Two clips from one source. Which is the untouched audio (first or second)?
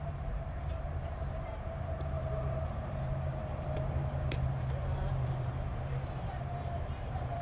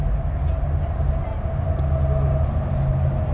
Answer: second